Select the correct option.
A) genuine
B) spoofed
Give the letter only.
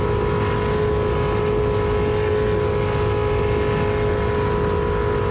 A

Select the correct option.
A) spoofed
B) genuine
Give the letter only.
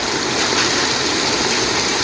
B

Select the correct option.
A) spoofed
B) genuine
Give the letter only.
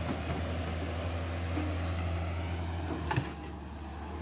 B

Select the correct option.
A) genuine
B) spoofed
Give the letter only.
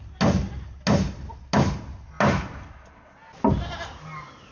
A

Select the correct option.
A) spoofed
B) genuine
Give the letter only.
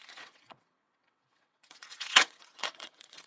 A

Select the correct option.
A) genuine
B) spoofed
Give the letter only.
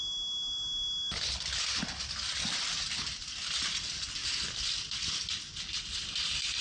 A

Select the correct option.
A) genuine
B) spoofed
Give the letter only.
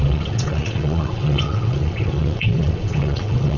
B